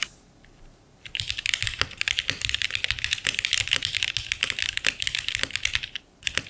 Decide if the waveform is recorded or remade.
recorded